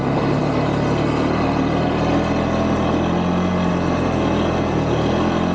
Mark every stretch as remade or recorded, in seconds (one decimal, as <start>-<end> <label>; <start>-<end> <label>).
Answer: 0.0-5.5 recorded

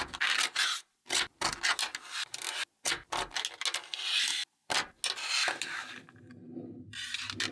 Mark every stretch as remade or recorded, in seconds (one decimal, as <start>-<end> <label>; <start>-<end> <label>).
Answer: 0.0-7.5 recorded

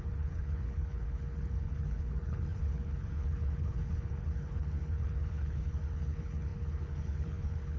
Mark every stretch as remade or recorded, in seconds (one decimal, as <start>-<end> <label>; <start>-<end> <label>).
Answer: 0.0-7.8 remade

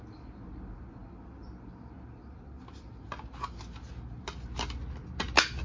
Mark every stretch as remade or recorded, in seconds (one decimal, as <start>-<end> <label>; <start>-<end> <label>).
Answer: 0.0-5.6 recorded

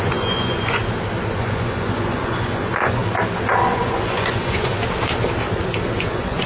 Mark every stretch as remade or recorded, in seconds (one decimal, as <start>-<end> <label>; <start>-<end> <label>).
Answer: 0.0-0.8 remade; 0.8-1.3 recorded; 1.3-3.0 remade; 3.0-3.7 recorded; 3.7-4.7 remade; 4.7-6.0 recorded; 6.0-6.5 remade

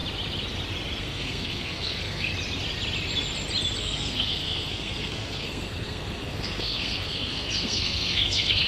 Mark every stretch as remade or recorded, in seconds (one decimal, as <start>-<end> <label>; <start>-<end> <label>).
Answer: 0.0-1.0 recorded; 1.0-2.3 remade; 2.3-3.8 recorded; 3.8-8.7 remade